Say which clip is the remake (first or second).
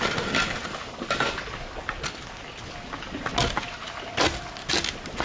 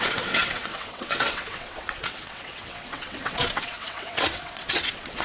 second